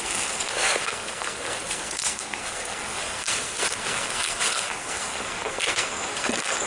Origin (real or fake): fake